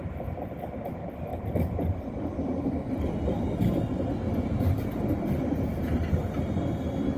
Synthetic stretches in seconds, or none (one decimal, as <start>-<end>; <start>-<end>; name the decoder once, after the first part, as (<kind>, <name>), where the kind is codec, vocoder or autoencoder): 1.3-5.5 (vocoder, BigVGAN v2)